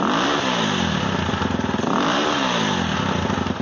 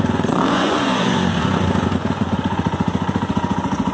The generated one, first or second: second